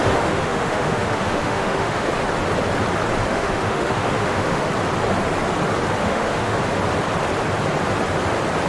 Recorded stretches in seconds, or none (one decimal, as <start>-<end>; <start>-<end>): 2.1-3.3; 4.7-6.0; 6.6-8.7